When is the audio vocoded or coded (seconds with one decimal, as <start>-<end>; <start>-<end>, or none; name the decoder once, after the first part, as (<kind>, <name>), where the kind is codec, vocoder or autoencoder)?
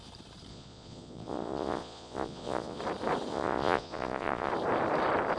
0.5-2.8 (vocoder, Vocos); 3.3-4.5